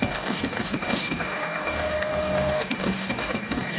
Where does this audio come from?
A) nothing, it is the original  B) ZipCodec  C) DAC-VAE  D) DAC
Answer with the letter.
D